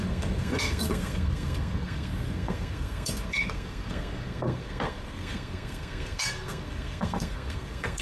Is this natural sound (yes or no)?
no